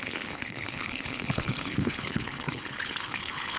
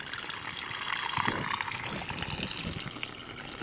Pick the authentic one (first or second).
second